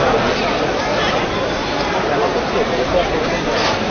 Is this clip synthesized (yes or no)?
yes